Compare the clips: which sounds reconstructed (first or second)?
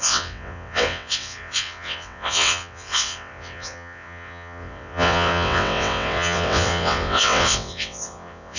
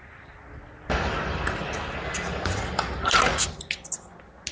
first